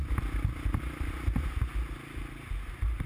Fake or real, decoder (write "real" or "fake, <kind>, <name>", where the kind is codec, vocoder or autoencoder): real